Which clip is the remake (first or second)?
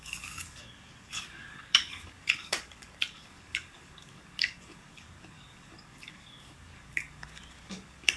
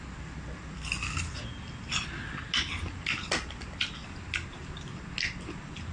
first